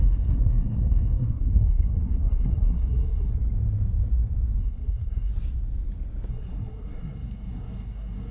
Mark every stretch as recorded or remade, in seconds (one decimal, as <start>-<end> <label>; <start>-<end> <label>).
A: 0.0-3.3 remade; 3.3-4.6 recorded; 4.6-5.3 remade; 5.3-6.3 recorded; 6.3-8.3 remade